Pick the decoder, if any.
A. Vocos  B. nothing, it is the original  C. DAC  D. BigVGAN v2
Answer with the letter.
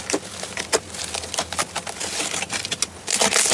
B